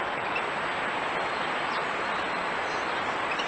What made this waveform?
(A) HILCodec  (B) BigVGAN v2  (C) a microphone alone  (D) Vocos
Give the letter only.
C